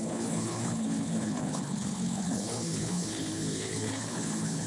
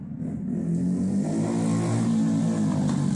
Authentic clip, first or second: second